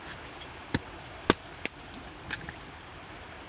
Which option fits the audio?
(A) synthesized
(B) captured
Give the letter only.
B